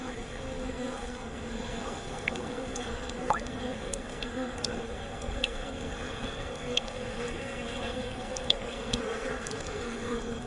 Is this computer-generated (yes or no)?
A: yes